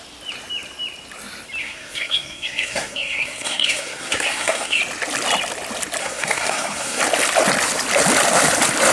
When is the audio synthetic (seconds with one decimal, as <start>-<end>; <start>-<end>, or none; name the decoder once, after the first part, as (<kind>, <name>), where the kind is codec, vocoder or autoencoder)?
1.6-4.8 (codec, SNAC); 6.0-7.0